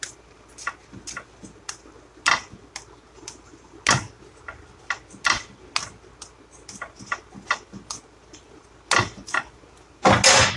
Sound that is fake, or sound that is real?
real